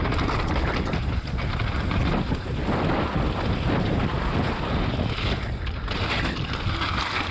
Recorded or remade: recorded